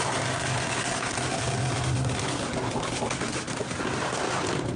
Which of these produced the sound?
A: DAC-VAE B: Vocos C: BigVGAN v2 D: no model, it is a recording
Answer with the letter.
D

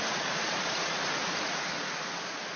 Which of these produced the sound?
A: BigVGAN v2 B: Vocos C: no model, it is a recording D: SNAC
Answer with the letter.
B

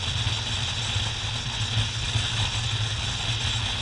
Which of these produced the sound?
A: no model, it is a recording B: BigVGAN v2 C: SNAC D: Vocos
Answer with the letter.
A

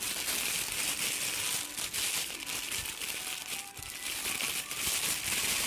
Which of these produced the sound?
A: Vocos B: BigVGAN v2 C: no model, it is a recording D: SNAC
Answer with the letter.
C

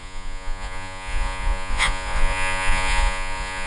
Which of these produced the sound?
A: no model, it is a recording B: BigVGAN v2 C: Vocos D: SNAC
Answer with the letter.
C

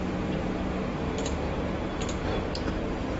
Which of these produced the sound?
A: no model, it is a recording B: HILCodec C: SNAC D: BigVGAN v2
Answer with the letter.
D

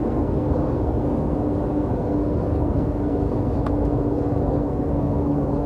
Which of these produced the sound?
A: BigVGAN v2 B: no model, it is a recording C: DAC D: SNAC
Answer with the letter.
D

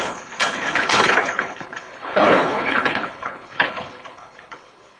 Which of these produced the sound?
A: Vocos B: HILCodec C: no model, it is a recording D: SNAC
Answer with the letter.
B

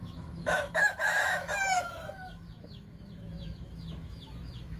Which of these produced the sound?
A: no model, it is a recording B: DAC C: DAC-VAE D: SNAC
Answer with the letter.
C